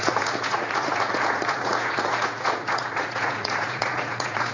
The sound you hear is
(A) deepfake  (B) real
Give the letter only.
A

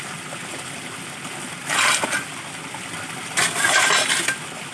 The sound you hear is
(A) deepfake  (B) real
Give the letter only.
B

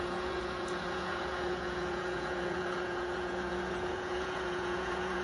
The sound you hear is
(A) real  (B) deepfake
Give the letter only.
B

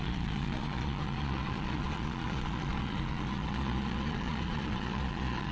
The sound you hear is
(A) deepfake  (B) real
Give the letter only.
A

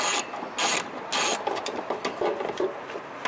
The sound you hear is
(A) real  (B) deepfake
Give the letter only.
A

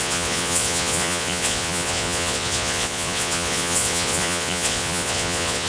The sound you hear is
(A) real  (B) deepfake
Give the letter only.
B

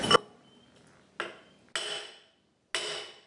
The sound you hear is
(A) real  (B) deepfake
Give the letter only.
A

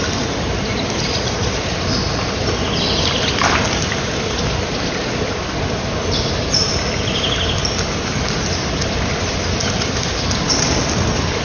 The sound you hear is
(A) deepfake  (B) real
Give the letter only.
B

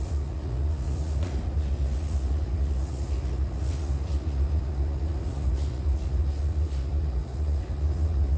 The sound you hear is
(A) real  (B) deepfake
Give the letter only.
B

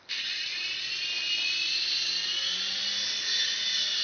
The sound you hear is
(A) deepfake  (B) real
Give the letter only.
B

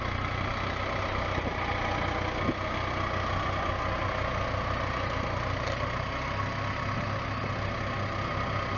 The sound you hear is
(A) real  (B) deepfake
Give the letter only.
A